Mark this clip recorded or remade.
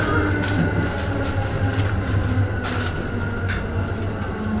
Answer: recorded